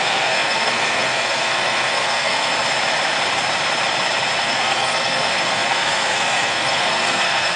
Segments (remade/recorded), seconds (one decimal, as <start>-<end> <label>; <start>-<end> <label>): 0.0-2.5 remade; 2.5-4.4 recorded; 4.4-7.6 remade